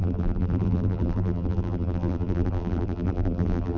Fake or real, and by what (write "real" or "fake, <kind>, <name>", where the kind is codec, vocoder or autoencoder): fake, vocoder, BigVGAN v2